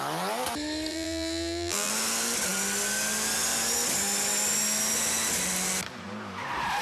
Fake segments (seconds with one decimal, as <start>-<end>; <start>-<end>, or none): 0.9-1.9